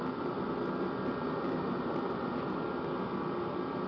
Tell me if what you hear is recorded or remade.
recorded